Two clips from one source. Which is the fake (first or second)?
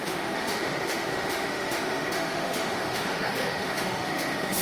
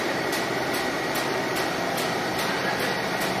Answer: first